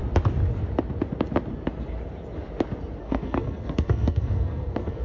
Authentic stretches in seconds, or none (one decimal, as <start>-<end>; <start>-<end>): 0.0-3.0

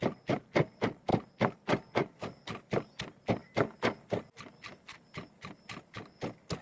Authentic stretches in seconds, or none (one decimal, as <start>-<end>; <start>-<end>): 0.0-6.6

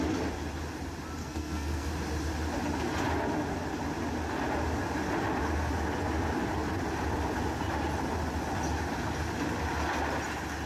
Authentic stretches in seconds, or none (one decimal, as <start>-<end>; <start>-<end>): 0.0-1.2; 1.9-10.7

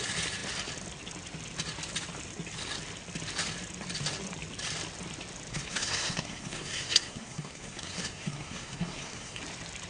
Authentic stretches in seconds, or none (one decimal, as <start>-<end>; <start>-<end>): 0.0-5.5; 9.4-9.9

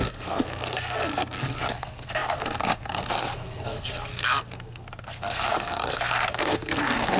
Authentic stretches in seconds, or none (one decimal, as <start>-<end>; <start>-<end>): none

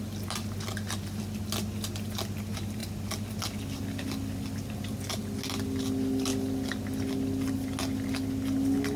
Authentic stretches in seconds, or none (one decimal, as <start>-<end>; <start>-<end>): 0.0-9.0